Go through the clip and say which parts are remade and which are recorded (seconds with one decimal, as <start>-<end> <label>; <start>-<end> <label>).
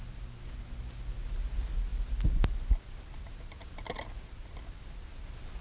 0.0-5.6 recorded